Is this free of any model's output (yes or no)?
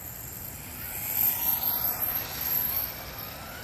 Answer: yes